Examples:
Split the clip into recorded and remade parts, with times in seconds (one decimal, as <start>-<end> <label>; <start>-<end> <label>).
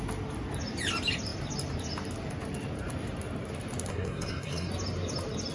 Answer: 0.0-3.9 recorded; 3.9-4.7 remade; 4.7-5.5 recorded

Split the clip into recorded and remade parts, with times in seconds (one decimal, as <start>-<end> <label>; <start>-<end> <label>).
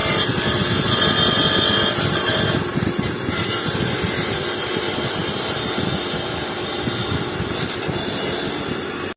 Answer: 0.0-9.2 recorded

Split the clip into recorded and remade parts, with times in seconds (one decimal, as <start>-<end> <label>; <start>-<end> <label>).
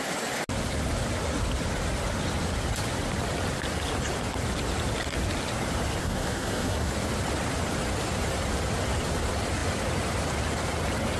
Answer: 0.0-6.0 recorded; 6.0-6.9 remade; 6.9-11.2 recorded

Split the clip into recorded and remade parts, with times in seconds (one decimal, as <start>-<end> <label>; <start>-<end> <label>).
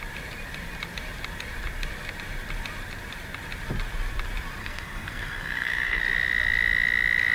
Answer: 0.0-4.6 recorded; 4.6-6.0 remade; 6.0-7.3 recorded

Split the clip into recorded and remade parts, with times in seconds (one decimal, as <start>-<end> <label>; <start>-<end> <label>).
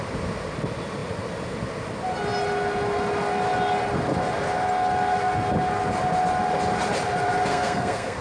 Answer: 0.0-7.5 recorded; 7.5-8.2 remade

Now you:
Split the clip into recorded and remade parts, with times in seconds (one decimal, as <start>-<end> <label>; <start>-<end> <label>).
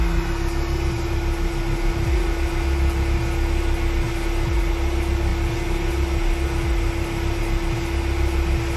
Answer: 0.0-8.8 recorded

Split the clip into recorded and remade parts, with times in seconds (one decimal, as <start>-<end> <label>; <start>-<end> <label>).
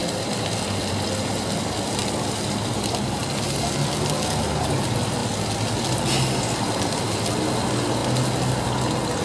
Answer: 0.0-9.2 recorded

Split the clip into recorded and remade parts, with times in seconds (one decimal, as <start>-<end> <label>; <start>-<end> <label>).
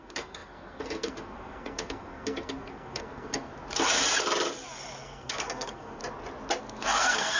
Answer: 0.0-3.5 remade; 3.5-5.0 recorded; 5.0-6.0 remade; 6.0-6.6 recorded; 6.6-7.4 remade